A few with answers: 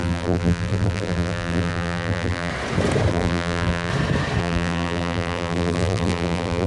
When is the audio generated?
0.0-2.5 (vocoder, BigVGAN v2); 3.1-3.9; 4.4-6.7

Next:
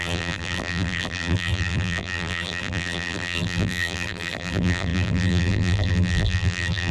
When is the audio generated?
0.0-6.9 (vocoder, BigVGAN v2)

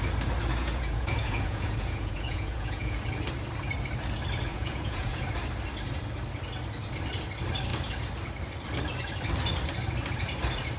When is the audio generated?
0.6-3.0 (vocoder, Vocos); 4.5-5.2